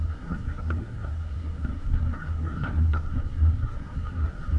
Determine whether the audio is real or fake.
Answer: fake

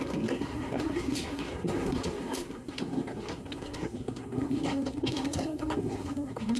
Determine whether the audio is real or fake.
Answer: fake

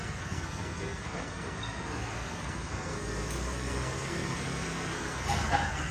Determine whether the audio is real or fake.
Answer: fake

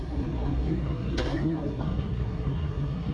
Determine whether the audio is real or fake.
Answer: fake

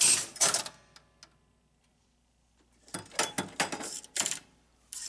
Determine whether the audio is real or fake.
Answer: real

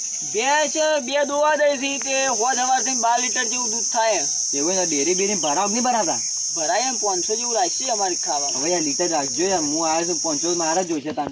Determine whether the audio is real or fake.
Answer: real